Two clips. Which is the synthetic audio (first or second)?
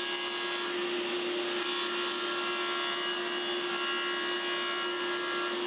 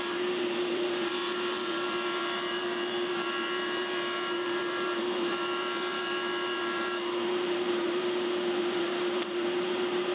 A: second